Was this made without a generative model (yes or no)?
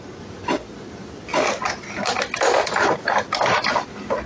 yes